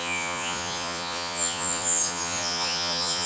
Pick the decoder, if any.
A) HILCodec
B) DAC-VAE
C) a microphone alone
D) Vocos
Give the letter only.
D